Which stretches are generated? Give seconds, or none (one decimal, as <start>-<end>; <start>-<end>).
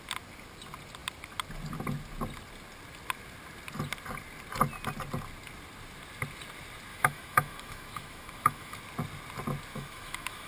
6.9-8.8; 9.7-10.5